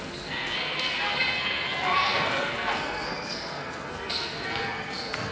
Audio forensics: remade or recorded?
remade